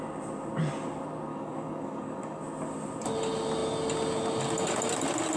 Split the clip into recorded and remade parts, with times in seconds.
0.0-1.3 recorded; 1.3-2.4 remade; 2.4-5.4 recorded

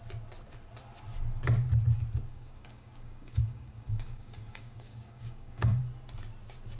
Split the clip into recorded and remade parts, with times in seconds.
0.0-2.3 recorded; 2.3-5.8 remade; 5.8-6.8 recorded